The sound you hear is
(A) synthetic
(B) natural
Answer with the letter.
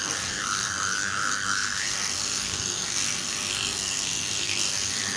A